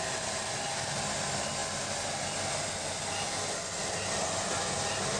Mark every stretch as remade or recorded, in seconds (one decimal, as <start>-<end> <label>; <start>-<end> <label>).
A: 0.0-5.2 recorded